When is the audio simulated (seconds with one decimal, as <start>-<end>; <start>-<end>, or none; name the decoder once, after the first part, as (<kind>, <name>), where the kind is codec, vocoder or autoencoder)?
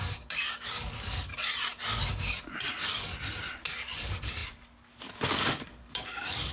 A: 0.0-1.3 (codec, DAC); 2.7-3.1; 3.6-6.5